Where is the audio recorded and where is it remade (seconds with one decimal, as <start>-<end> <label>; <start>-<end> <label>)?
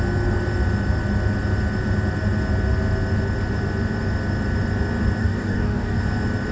0.0-5.2 recorded; 5.2-6.0 remade; 6.0-6.5 recorded